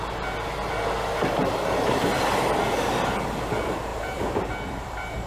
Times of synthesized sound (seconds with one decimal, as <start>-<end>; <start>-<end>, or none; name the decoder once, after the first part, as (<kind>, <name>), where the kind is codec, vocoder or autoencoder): 1.4-2.0 (vocoder, BigVGAN v2); 3.9-5.3